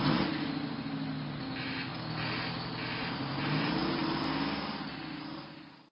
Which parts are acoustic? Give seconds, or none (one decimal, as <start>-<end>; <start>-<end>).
0.0-5.9